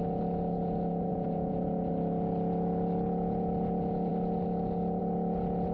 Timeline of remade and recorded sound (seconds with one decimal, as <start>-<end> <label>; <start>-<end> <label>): 0.0-1.1 recorded; 1.1-1.9 remade; 1.9-5.7 recorded

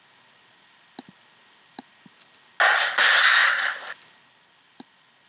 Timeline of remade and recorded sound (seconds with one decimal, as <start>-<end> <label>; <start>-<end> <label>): 0.0-5.3 recorded

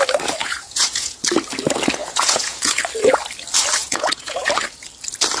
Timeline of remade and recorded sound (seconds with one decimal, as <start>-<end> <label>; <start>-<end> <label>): 0.0-0.4 recorded; 0.4-1.2 remade; 1.2-2.0 recorded; 2.0-2.8 remade; 2.8-3.8 recorded; 3.8-4.5 remade; 4.5-5.4 recorded

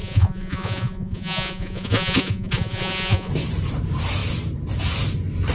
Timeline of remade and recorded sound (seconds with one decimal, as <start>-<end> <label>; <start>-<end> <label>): 0.0-3.3 remade; 3.3-5.5 recorded

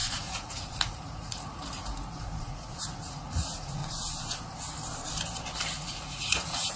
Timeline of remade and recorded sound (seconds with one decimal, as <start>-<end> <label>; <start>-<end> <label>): 0.0-3.8 remade; 3.8-5.6 recorded; 5.6-6.8 remade

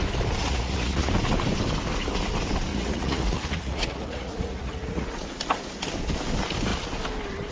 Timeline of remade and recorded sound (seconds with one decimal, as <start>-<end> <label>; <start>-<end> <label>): 0.0-0.4 recorded; 0.4-1.1 remade; 1.1-2.7 recorded; 2.7-5.4 remade; 5.4-7.5 recorded